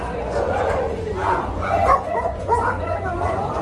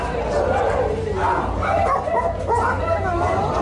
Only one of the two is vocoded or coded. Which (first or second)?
first